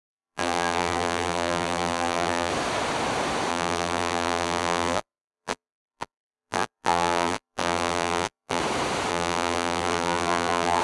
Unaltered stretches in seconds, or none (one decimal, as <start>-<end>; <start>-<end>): 2.5-3.5; 8.6-9.1